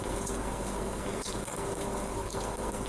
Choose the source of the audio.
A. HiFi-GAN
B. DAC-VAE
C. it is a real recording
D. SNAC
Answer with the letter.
D